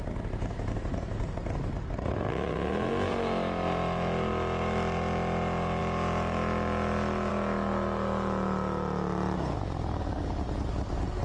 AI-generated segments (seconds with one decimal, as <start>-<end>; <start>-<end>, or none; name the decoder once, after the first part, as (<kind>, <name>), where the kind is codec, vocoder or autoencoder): none